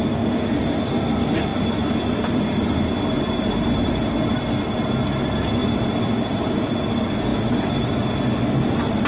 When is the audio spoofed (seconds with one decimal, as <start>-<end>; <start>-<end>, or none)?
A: 1.5-3.9; 5.6-6.6; 7.3-8.2